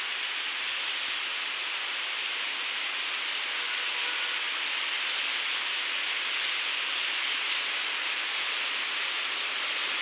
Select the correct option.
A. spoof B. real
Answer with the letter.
B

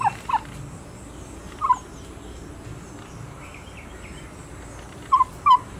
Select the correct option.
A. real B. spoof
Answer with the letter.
A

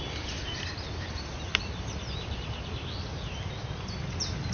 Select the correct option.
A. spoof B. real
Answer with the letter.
B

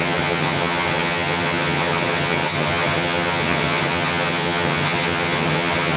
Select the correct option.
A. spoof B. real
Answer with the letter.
A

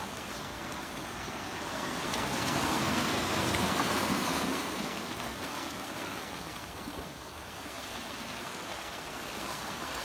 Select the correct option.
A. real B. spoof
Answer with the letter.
B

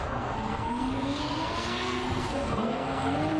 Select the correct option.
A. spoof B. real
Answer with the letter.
A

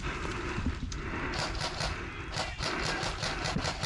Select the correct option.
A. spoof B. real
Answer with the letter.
A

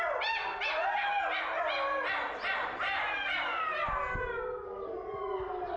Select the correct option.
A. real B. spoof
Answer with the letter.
A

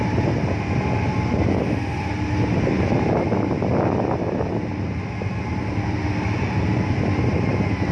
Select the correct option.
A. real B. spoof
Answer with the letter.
A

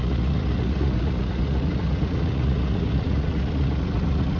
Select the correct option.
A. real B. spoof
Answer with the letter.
B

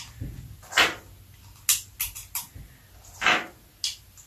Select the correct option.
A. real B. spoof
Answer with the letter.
A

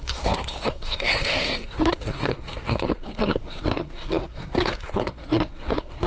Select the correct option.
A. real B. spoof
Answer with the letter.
B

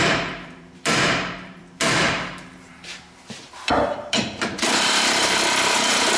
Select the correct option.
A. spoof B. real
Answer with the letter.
A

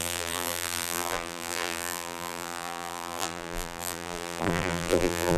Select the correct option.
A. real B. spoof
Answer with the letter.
B